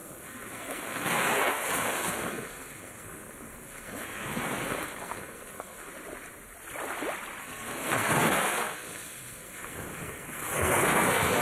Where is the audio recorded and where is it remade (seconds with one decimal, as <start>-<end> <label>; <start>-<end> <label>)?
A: 0.0-5.9 remade; 5.9-7.4 recorded; 7.4-11.4 remade